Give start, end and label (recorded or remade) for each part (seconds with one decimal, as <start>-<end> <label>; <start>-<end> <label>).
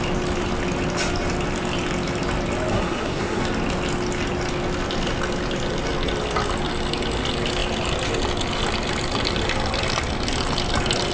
0.0-2.7 recorded; 2.7-3.4 remade; 3.4-11.1 recorded